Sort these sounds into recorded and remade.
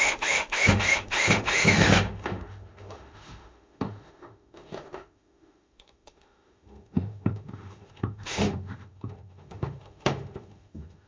remade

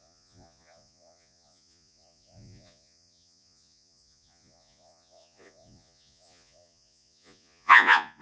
remade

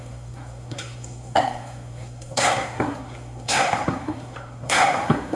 remade